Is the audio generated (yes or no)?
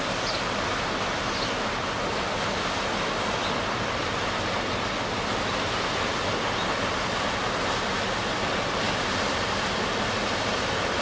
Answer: no